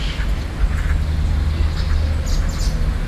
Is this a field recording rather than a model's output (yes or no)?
yes